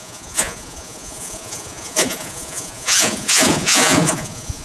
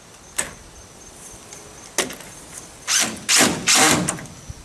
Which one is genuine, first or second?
second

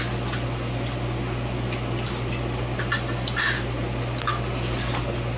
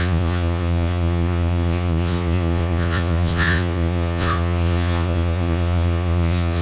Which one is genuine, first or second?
first